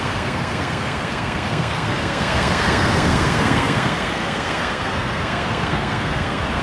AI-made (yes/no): yes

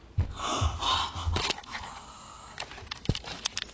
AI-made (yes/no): no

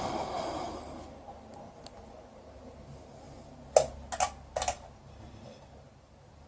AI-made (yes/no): no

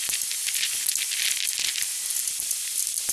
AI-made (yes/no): no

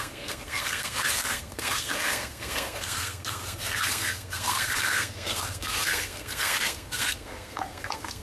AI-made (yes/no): yes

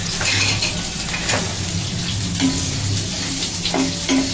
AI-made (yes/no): no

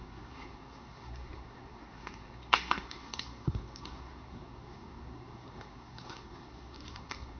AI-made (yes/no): yes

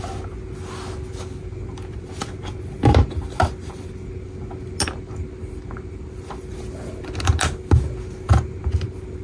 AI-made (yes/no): no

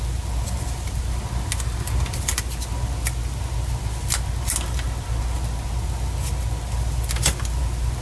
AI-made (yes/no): no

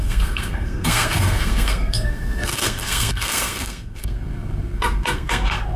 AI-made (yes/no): yes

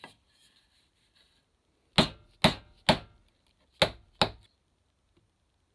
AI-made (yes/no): no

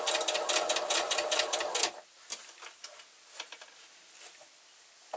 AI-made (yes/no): no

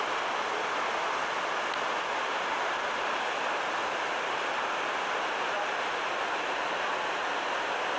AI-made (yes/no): no